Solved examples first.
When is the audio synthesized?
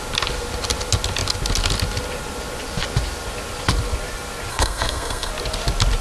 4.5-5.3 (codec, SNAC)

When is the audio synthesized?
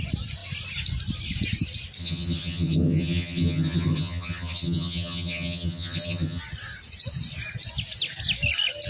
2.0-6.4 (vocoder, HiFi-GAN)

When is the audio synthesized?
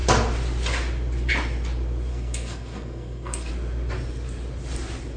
2.1-3.5 (codec, SNAC)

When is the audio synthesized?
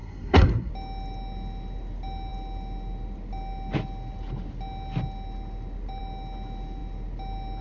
0.0-0.7 (codec, SNAC)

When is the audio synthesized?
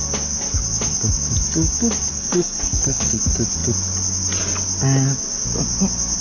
2.1-3.2 (codec, SNAC)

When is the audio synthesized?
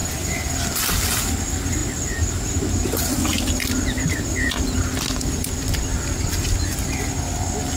0.0-1.0 (vocoder, BigVGAN v2); 3.3-6.1